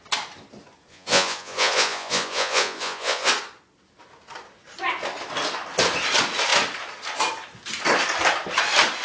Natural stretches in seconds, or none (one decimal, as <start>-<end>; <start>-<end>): 0.0-0.9; 3.3-9.0